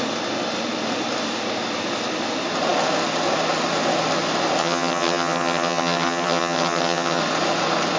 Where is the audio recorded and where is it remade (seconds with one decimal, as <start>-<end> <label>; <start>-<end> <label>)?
0.0-4.6 recorded; 4.6-7.2 remade; 7.2-8.0 recorded